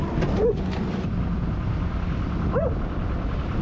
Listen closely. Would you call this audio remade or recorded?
recorded